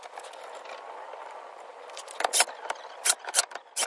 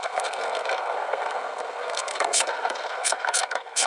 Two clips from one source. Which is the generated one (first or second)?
second